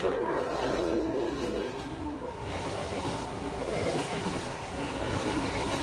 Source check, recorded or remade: remade